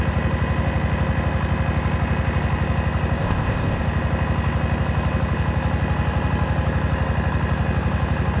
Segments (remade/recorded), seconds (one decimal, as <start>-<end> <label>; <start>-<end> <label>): 0.0-3.2 recorded; 3.2-3.8 remade; 3.8-8.4 recorded